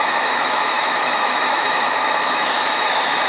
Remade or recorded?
remade